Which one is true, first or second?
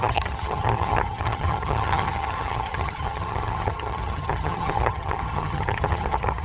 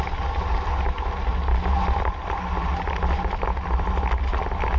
second